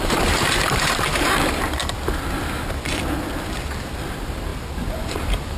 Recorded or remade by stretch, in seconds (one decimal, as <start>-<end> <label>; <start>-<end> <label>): 0.0-1.8 remade; 1.8-4.1 recorded; 4.1-4.5 remade; 4.5-5.0 recorded; 5.0-5.6 remade